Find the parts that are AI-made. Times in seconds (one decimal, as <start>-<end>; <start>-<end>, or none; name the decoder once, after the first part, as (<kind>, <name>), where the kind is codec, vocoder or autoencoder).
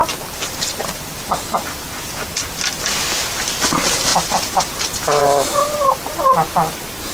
4.1-4.7 (vocoder, BigVGAN v2); 5.2-6.2